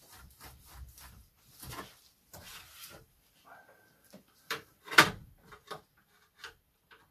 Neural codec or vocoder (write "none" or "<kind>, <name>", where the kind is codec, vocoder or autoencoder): vocoder, BigVGAN v2